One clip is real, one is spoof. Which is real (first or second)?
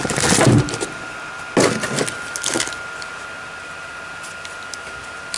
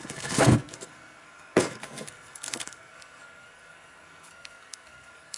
first